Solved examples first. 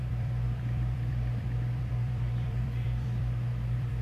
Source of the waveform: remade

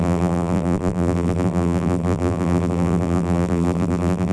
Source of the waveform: remade